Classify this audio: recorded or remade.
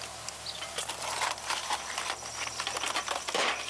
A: recorded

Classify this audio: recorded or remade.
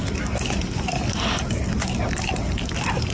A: recorded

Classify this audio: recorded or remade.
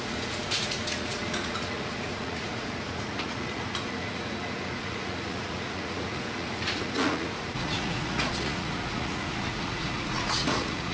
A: remade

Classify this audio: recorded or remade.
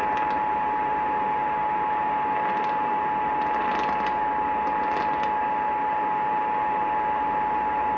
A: recorded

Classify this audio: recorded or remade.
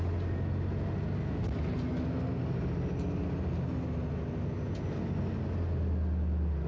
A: recorded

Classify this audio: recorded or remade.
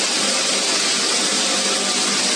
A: recorded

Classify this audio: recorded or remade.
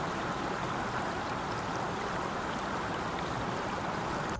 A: recorded